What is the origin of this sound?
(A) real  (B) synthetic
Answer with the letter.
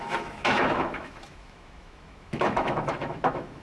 B